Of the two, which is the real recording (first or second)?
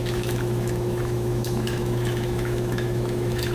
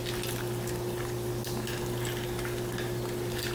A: second